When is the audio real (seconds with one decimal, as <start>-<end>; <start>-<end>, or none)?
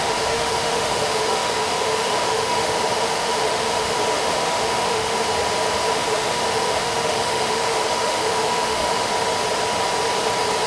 5.3-5.9; 9.1-10.7